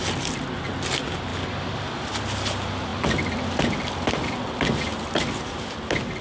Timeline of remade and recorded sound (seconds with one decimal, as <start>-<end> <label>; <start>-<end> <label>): 0.0-6.2 recorded